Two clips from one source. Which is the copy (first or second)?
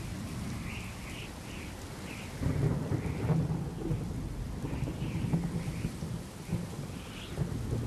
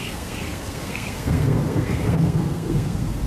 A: second